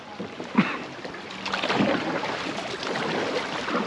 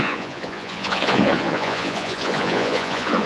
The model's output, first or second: second